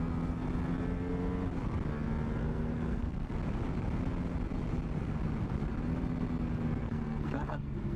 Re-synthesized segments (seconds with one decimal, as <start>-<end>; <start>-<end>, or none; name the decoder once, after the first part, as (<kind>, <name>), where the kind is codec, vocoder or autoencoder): 2.4-3.3 (codec, SNAC); 6.8-8.0

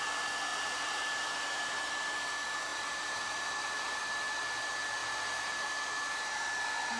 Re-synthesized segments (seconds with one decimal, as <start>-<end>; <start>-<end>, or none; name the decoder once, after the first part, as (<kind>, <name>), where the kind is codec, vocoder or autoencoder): 0.5-1.9 (vocoder, BigVGAN v2); 2.7-4.0; 5.0-5.7

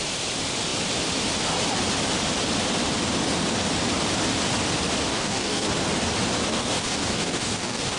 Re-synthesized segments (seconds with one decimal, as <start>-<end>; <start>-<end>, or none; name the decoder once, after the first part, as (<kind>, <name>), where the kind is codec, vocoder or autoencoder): 5.1-5.7 (codec, DAC); 6.5-8.0